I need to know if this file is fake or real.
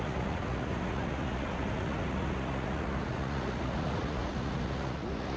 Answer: fake